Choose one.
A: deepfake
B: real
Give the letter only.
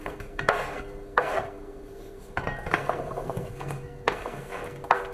A